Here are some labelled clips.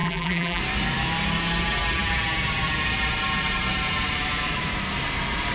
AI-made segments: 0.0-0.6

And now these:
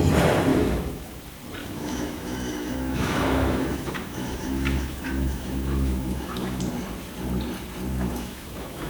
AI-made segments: 0.5-1.2; 1.6-6.6; 7.9-8.9

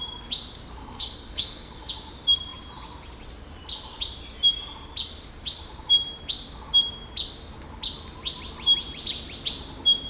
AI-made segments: 0.8-1.9

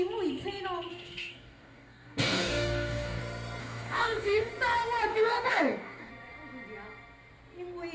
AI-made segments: 0.9-3.2; 3.6-4.5; 5.1-6.1